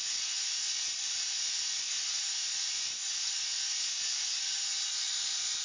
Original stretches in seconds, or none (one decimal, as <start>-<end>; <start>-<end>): 0.0-5.6

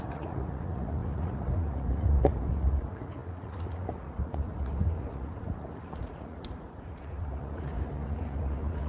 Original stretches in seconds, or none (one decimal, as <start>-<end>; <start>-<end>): none

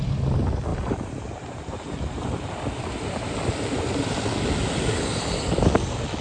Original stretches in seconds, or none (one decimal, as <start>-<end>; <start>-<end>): 0.0-0.7; 4.1-6.2

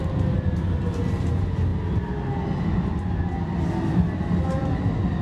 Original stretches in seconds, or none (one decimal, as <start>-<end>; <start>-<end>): 0.0-5.2